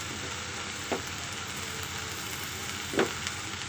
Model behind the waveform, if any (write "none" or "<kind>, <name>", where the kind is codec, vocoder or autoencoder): none